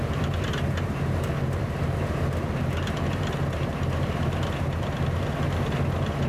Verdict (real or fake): fake